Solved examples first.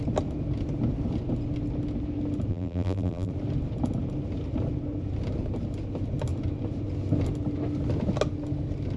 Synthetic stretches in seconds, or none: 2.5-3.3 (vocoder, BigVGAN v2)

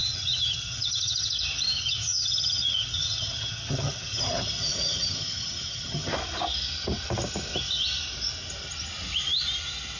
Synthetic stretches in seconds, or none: 0.0-1.3 (vocoder, HiFi-GAN); 1.8-6.1

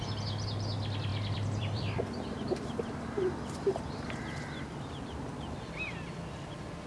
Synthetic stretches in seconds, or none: 1.1-4.9 (vocoder, BigVGAN v2)